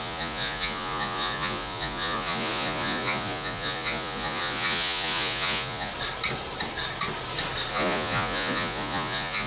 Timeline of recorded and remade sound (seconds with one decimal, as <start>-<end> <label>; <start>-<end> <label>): 0.0-5.9 remade; 5.9-7.7 recorded; 7.7-9.5 remade